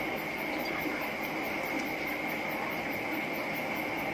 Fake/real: real